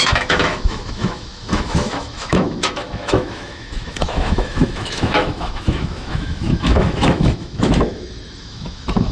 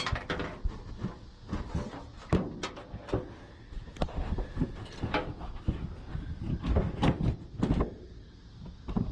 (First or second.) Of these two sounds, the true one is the second